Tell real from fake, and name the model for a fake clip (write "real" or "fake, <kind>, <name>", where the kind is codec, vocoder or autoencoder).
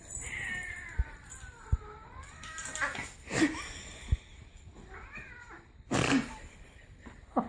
real